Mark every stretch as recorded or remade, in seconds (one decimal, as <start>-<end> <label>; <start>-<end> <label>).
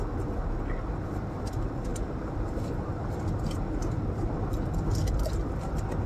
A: 0.0-6.1 recorded